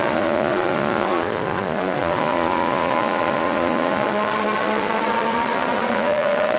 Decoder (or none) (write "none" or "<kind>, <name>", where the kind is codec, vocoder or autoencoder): vocoder, Vocos